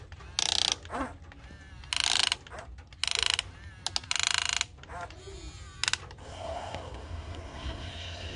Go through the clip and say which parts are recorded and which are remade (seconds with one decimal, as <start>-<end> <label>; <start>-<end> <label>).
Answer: 0.0-6.2 recorded; 6.2-8.4 remade